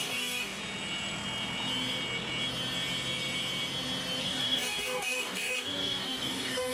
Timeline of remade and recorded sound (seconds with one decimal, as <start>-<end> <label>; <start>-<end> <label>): 0.0-0.6 remade; 0.6-4.2 recorded; 4.2-6.7 remade